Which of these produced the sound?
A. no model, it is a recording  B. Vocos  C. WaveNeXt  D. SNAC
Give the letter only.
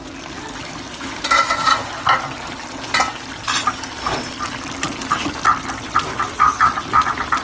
A